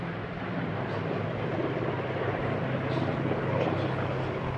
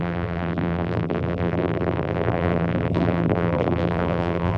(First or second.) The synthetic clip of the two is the second